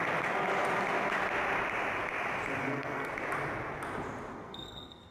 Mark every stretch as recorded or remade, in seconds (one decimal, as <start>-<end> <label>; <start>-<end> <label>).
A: 0.0-2.6 recorded; 2.6-3.1 remade; 3.1-4.3 recorded; 4.3-5.1 remade